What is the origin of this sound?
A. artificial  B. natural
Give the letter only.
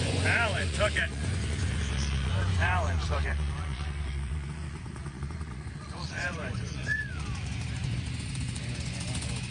A